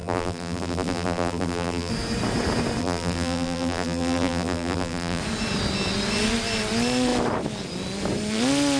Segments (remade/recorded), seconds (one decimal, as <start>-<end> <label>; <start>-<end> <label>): 0.0-1.9 remade; 1.9-2.8 recorded; 2.8-5.2 remade; 5.2-8.8 recorded